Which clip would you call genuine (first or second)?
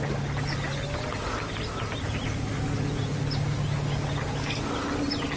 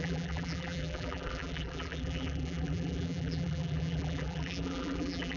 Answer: first